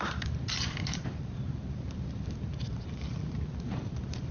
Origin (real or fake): fake